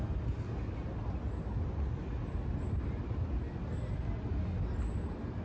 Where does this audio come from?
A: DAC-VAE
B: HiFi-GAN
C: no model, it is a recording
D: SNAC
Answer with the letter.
C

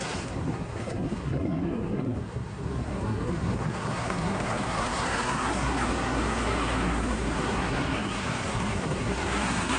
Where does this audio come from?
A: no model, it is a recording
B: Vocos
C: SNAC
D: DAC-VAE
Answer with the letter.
C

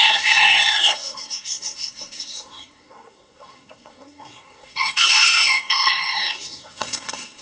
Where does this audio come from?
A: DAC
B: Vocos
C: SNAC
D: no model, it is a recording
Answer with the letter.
C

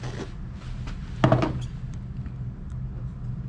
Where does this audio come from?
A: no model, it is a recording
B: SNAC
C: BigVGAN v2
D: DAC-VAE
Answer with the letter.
A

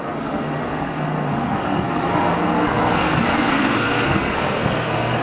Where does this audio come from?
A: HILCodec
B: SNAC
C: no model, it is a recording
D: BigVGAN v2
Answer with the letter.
B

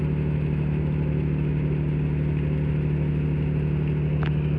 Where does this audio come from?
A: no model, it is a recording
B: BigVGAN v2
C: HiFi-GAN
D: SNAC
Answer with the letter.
A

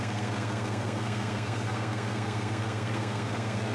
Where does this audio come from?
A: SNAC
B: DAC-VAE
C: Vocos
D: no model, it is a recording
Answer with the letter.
A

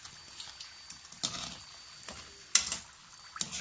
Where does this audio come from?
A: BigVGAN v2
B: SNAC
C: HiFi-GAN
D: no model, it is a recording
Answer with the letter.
D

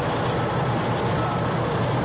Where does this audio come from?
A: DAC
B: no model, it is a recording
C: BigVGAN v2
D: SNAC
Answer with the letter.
B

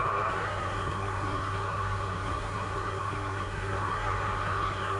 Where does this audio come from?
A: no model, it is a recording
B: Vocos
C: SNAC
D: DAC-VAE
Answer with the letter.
C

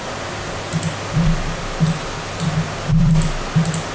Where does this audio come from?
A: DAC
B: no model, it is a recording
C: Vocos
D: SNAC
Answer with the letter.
B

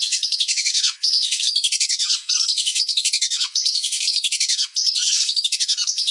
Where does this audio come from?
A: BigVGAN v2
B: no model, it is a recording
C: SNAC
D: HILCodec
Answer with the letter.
C